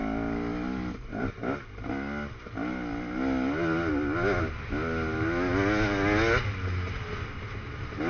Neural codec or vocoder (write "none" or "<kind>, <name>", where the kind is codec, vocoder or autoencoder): none